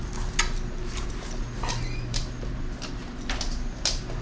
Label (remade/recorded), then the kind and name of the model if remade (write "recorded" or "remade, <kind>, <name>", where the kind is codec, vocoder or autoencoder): recorded